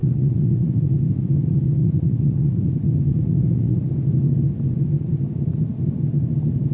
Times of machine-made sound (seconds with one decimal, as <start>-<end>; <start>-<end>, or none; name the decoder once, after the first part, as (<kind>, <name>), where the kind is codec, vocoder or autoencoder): 0.0-0.9 (vocoder, Vocos); 1.8-2.6; 3.1-3.9